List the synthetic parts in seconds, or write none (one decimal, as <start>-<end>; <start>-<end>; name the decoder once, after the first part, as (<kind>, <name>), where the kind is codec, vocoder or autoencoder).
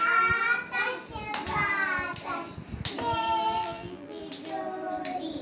3.6-4.2 (vocoder, BigVGAN v2)